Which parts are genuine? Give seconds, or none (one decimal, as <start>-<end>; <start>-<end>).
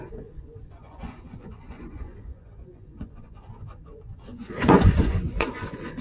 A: none